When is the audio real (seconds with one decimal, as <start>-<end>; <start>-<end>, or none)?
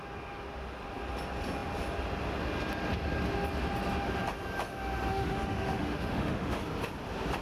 0.0-5.1; 6.6-7.4